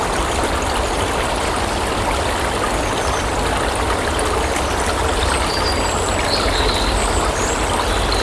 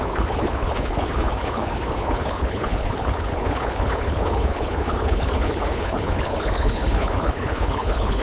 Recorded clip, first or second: first